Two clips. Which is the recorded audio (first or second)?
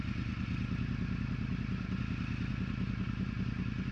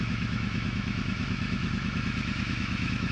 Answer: first